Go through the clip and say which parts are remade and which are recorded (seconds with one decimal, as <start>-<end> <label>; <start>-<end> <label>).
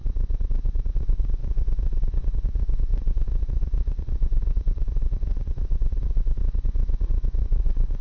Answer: 0.0-0.9 recorded; 0.9-6.4 remade; 6.4-7.4 recorded; 7.4-8.0 remade